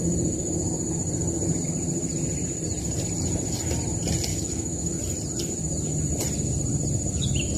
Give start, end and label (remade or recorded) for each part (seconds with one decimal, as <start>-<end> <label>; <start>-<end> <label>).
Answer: 0.0-4.3 recorded; 4.3-5.0 remade; 5.0-7.6 recorded